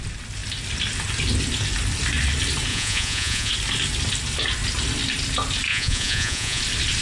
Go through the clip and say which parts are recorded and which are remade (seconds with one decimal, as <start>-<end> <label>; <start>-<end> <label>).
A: 0.0-2.7 recorded; 2.7-3.5 remade; 3.5-5.7 recorded; 5.7-6.6 remade; 6.6-7.0 recorded